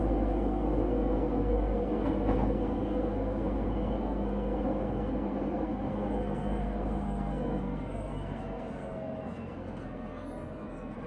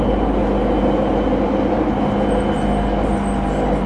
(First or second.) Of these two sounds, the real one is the second